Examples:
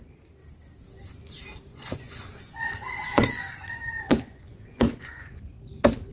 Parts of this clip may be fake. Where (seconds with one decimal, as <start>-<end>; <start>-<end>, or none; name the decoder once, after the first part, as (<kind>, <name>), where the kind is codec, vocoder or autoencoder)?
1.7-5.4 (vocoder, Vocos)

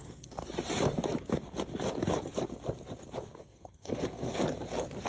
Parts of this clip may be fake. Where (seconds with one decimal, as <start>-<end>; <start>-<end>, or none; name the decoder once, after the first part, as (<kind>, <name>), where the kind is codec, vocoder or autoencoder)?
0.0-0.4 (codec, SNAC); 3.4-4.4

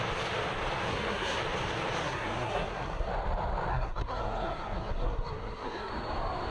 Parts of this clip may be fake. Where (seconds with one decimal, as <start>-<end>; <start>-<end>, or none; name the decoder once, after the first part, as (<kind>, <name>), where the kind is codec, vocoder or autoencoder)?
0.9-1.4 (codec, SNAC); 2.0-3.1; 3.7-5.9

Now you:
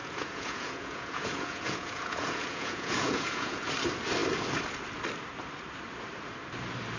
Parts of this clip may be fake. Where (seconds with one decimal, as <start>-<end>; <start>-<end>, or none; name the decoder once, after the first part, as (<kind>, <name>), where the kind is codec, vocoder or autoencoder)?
0.0-3.7 (vocoder, Vocos)

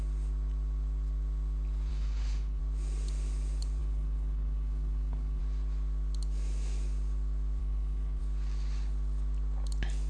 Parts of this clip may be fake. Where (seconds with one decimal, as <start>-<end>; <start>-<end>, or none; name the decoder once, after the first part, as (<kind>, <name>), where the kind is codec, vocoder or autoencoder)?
1.9-2.6 (codec, HILCodec); 3.8-5.4; 7.6-8.2

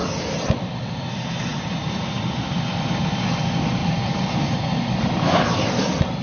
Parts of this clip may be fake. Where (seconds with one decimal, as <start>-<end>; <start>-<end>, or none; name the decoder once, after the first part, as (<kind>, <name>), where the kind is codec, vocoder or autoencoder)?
0.0-1.0 (vocoder, BigVGAN v2); 1.5-2.5; 3.8-5.7

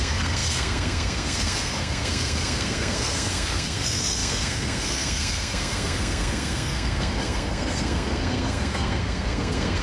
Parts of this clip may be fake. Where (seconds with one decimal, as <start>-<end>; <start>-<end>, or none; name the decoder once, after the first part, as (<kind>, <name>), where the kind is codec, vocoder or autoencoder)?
0.0-9.8 (codec, SNAC)

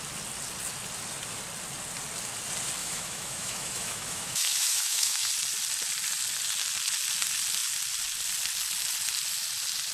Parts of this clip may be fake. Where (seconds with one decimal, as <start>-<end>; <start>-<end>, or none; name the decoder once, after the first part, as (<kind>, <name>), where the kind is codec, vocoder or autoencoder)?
2.8-5.3 (autoencoder, DAC-VAE)